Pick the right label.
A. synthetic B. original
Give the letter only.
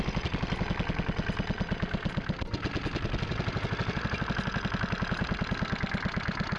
B